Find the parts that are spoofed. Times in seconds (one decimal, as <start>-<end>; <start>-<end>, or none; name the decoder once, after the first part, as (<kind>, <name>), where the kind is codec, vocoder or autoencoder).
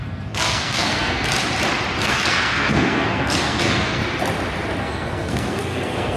0.0-1.3 (codec, SNAC); 2.0-4.0; 4.8-6.2